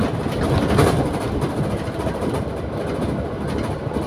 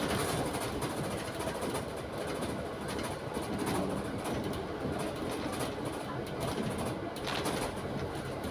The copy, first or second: first